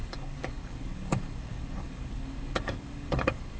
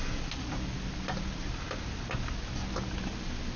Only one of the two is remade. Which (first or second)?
first